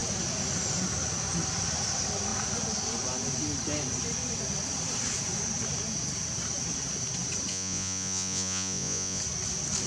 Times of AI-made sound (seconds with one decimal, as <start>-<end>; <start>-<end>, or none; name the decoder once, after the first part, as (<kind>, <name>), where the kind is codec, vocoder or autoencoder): 7.5-9.2 (vocoder, Vocos)